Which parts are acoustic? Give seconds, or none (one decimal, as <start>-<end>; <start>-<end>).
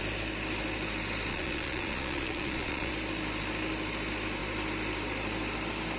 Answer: 0.0-1.3; 2.9-6.0